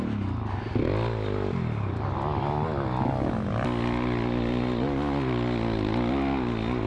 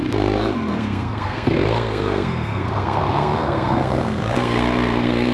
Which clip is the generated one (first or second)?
second